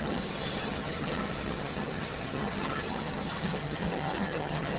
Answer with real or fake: fake